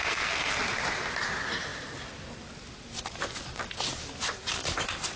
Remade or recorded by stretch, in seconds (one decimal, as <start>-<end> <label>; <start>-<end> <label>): 0.0-0.6 remade; 0.6-5.2 recorded